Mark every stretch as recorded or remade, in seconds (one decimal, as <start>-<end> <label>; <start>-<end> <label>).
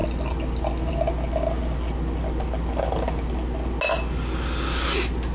0.0-5.3 recorded